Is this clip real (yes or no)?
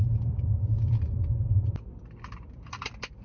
no